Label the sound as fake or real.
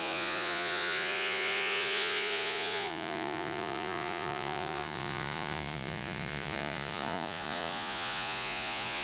fake